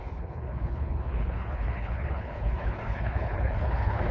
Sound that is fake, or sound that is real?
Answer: fake